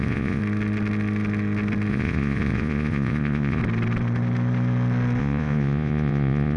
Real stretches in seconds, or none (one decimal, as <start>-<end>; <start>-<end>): 0.4-1.9; 3.6-5.2